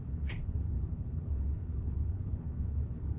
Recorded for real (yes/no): no